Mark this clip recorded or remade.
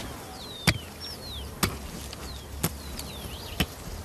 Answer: recorded